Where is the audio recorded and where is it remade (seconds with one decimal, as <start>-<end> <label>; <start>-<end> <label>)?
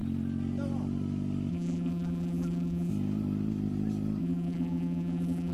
0.0-1.5 recorded; 1.5-2.9 remade; 2.9-4.2 recorded; 4.2-5.5 remade